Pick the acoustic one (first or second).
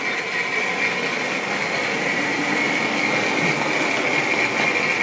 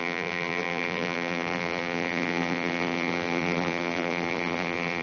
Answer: first